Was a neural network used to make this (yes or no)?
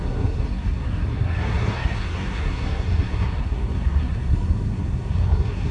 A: yes